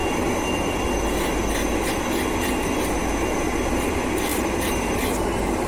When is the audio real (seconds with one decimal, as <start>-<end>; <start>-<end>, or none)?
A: 0.0-4.3